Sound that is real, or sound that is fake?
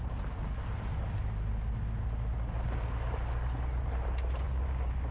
real